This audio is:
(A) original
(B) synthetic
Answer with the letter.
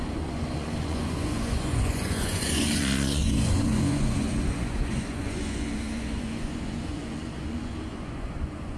B